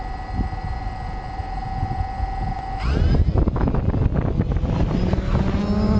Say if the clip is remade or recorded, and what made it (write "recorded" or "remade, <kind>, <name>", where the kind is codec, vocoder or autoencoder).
recorded